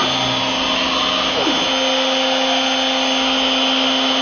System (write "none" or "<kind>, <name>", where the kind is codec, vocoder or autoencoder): none